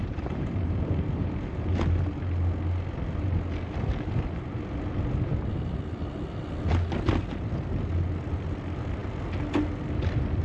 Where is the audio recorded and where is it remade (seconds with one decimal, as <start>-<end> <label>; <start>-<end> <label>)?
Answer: 0.0-1.7 remade; 1.7-10.4 recorded